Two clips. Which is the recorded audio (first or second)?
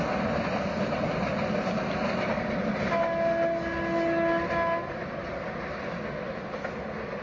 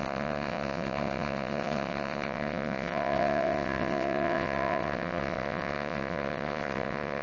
first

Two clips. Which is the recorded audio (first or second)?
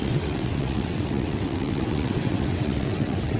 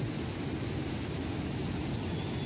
second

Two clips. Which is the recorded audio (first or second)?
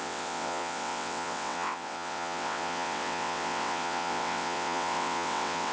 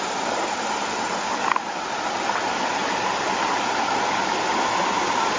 second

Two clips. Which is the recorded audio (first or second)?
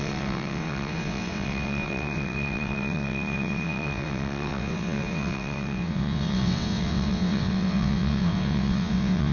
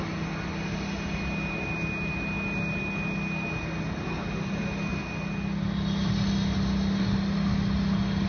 second